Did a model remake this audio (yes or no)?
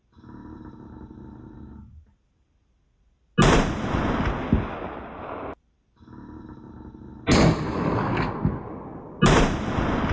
no